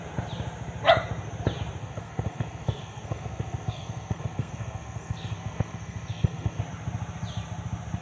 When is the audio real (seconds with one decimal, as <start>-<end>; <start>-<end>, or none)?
0.0-1.8; 6.6-8.0